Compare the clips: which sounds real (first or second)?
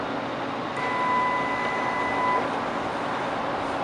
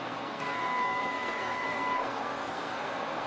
first